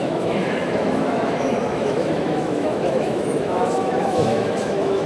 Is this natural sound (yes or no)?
no